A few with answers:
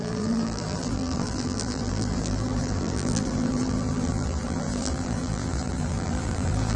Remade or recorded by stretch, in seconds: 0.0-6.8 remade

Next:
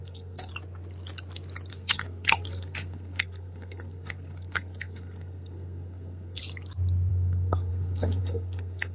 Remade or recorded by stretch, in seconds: 0.0-0.5 remade; 0.5-1.7 recorded; 1.7-6.4 remade; 6.4-7.1 recorded; 7.1-8.9 remade

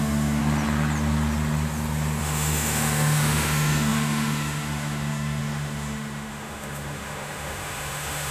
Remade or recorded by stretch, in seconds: 0.0-0.4 remade; 0.4-2.2 recorded; 2.2-8.3 remade